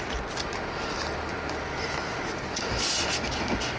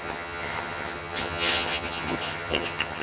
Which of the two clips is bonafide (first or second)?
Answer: first